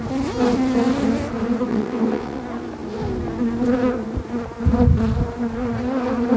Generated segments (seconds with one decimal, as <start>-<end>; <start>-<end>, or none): 1.7-2.4